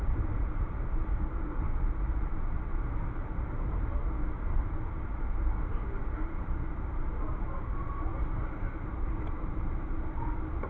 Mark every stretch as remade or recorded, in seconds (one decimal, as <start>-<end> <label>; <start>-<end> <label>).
0.0-2.7 remade; 2.7-3.3 recorded; 3.3-10.7 remade